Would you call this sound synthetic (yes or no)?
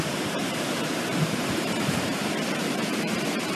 yes